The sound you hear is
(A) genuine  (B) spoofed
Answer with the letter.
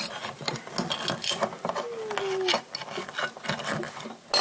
A